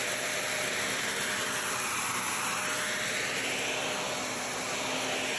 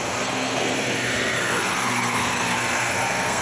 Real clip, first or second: first